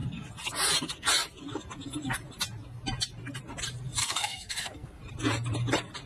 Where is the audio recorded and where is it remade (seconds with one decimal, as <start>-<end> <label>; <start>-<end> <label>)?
0.0-4.0 recorded; 4.0-5.0 remade; 5.0-6.1 recorded